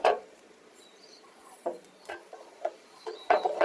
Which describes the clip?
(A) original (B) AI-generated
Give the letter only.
B